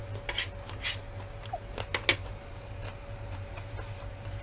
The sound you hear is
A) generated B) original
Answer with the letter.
B